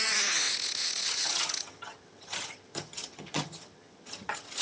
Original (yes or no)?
no